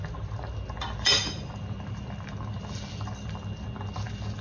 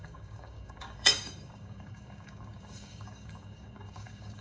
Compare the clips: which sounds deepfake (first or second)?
second